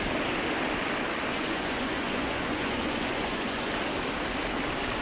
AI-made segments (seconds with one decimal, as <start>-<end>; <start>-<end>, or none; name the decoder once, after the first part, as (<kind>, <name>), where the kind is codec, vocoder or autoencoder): 1.3-3.7 (vocoder, Vocos)